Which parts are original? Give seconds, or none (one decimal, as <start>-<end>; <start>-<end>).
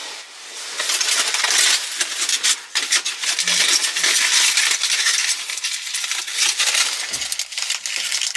0.0-8.4